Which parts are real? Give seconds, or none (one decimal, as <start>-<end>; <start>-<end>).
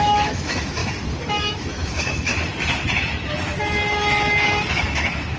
0.8-1.3; 2.3-4.7